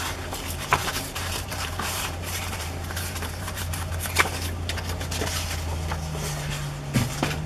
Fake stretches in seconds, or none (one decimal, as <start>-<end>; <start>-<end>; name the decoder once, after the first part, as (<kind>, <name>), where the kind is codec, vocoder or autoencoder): 0.8-3.9 (vocoder, BigVGAN v2)